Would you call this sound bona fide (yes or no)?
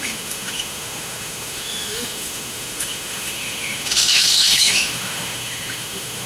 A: no